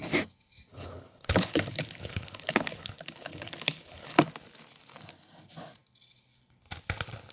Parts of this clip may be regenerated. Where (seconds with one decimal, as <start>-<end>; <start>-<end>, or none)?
0.7-4.2